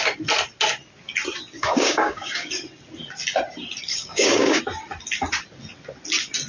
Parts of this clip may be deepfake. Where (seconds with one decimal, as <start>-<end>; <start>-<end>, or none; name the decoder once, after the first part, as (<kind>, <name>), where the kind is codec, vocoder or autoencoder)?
1.6-2.5 (codec, DAC); 3.9-4.6